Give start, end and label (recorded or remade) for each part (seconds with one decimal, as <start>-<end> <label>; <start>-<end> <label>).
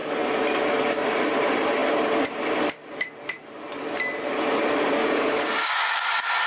0.0-5.0 recorded; 5.0-6.0 remade; 6.0-6.5 recorded